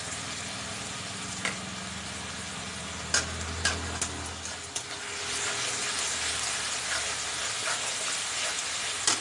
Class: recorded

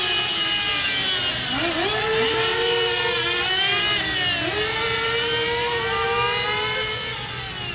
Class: recorded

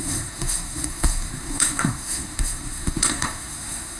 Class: remade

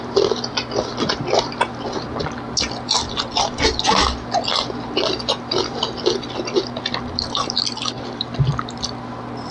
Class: recorded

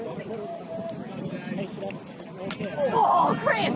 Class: recorded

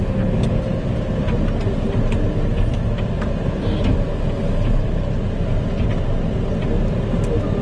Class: recorded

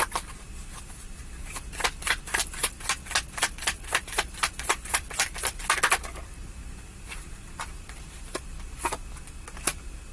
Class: recorded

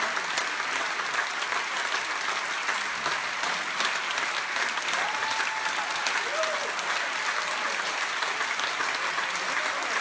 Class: recorded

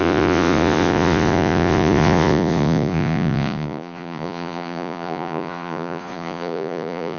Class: remade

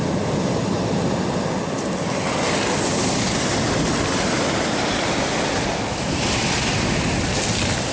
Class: recorded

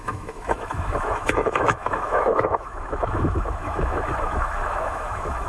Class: remade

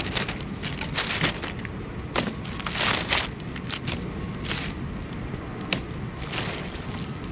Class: recorded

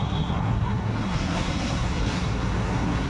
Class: remade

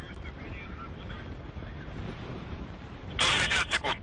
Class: remade